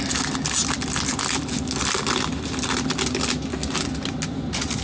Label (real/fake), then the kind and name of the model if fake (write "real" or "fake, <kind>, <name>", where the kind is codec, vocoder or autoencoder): real